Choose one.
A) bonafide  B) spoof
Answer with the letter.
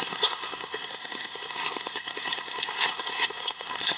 B